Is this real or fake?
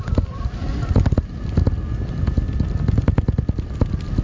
real